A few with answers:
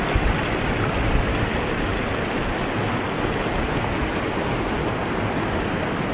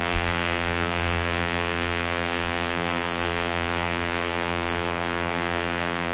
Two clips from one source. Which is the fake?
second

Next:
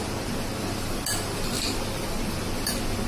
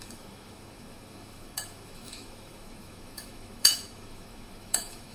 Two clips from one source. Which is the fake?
second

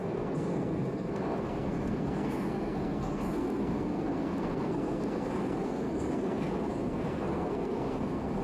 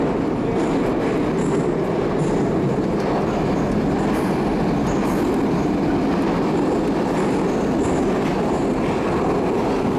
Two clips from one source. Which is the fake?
first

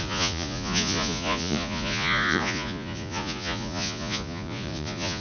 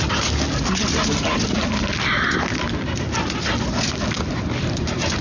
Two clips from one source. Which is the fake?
first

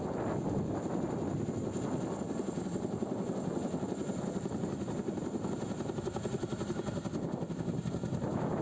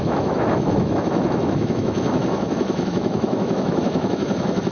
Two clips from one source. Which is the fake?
second